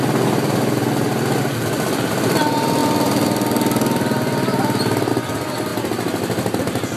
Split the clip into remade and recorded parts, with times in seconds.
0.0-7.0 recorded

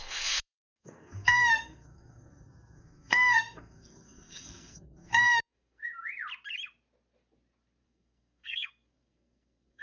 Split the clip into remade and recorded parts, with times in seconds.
0.0-5.8 remade; 5.8-7.8 recorded; 7.8-9.8 remade